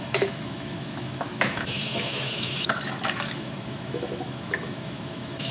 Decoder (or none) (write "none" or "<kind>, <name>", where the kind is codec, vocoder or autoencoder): autoencoder, DAC-VAE